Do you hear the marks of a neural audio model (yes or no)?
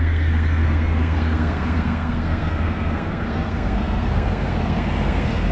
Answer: yes